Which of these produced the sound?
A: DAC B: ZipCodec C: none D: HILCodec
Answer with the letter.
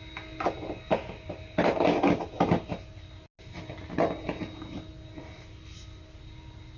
C